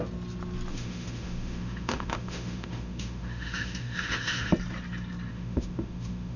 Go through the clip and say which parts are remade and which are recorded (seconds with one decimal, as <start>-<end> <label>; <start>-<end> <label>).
0.0-0.7 recorded; 0.7-4.5 remade; 4.5-5.3 recorded; 5.3-6.4 remade